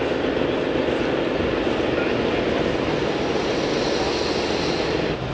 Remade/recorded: recorded